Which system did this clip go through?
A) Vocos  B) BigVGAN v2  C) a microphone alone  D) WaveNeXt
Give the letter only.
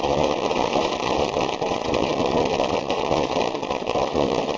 A